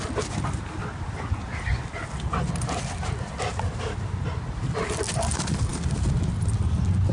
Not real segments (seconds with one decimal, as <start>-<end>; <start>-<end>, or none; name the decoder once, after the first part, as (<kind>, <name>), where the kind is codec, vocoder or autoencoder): none